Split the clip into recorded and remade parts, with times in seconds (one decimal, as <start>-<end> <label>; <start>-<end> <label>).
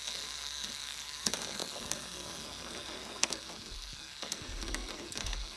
0.0-5.6 remade